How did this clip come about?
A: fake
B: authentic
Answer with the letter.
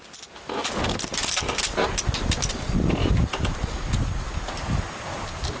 B